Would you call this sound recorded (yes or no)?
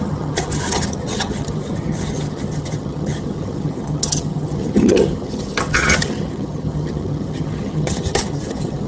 no